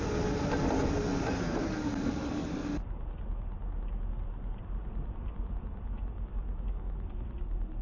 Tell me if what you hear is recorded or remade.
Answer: recorded